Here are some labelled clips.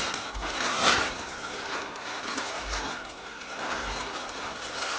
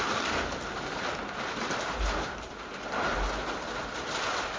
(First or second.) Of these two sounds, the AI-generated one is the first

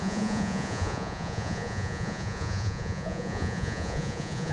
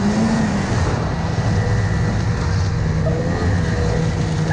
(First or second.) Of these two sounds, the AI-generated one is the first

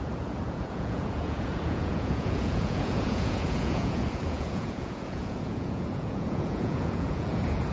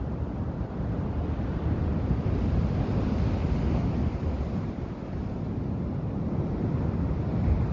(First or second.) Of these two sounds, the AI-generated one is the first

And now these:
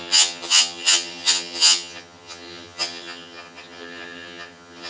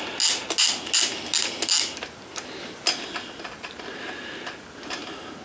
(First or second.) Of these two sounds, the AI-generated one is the first